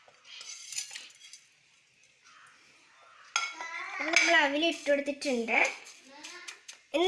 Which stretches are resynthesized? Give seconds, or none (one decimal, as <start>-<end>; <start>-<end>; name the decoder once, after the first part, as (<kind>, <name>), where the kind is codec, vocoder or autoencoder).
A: 5.4-5.9 (codec, SNAC)